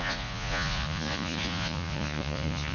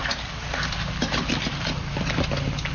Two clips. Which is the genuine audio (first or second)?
second